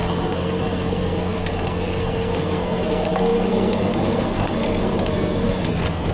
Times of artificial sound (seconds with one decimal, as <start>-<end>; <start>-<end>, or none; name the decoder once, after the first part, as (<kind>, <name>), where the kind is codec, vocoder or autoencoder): 0.0-6.1 (codec, SNAC)